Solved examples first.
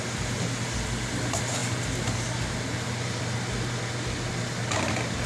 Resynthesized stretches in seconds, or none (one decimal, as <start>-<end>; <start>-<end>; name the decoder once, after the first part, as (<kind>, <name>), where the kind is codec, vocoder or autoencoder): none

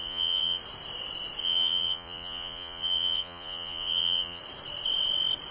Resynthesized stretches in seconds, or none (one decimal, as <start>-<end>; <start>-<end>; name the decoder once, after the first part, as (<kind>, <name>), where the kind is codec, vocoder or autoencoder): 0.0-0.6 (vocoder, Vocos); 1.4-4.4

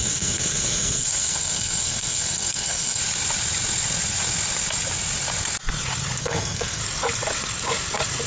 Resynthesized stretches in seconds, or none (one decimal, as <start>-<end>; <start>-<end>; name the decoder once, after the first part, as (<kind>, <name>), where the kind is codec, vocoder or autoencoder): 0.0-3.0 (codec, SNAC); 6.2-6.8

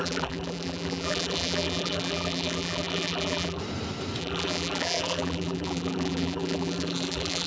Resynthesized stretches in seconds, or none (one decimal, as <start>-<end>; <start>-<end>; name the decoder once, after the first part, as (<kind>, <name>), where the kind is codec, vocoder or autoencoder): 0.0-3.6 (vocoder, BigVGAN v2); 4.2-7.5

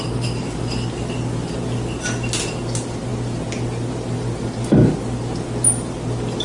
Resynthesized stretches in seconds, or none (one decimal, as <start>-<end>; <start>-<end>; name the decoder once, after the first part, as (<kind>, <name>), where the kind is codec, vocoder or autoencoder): none